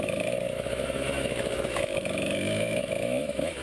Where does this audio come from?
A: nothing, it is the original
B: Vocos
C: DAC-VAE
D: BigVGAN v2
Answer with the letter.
C